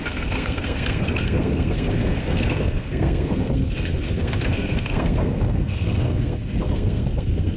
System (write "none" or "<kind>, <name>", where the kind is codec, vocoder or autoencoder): codec, SNAC